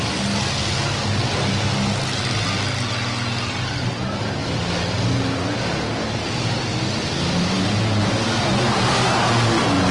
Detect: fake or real real